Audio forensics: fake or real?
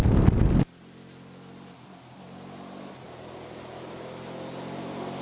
real